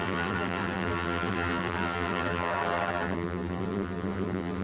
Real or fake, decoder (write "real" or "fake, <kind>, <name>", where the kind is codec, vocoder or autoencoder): fake, vocoder, BigVGAN v2